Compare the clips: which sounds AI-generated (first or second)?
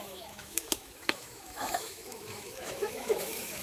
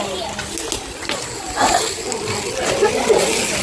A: first